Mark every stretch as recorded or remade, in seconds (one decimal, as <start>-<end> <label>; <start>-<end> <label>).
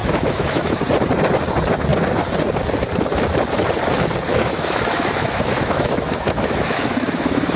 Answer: 0.0-0.8 remade; 0.8-4.3 recorded; 4.3-7.6 remade